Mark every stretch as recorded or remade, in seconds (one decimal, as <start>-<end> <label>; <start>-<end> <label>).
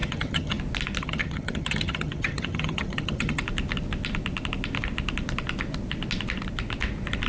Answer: 0.0-0.6 remade; 0.6-1.0 recorded; 1.0-3.4 remade; 3.4-7.3 recorded